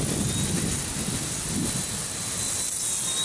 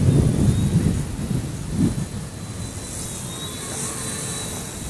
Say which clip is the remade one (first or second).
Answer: first